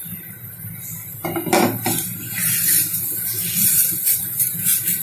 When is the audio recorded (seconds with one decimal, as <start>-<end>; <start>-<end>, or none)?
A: 0.0-5.0